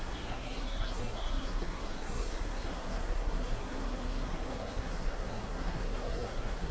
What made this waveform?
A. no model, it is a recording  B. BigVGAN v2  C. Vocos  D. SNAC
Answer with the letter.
D